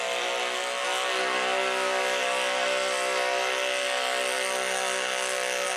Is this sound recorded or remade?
recorded